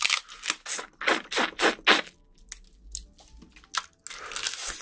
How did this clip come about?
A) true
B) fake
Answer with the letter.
A